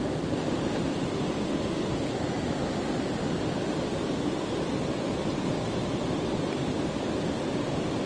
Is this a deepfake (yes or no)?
no